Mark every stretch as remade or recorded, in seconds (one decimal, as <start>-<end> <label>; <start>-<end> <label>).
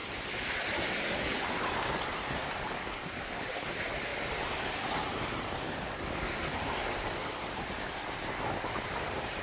0.0-9.4 recorded